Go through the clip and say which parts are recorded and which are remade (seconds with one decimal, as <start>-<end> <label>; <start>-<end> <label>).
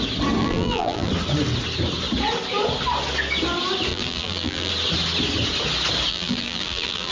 0.0-0.4 recorded; 0.4-1.1 remade; 1.1-3.9 recorded; 3.9-4.7 remade; 4.7-6.1 recorded; 6.1-7.1 remade